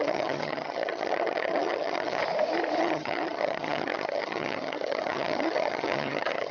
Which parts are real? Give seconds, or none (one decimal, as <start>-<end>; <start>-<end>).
2.2-2.8